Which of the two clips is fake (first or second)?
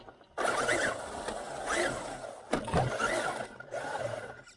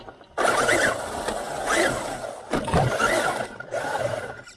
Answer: second